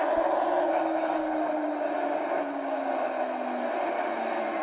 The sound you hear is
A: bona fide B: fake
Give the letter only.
A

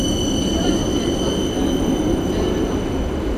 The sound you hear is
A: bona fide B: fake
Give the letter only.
A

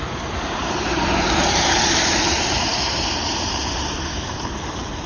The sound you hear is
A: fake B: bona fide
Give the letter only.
A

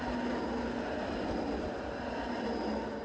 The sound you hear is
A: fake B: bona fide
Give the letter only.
B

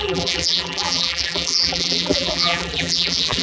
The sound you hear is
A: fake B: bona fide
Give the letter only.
A